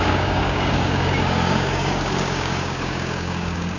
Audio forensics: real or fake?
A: fake